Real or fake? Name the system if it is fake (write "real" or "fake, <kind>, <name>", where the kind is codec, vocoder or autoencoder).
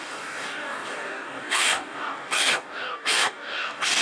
fake, codec, DAC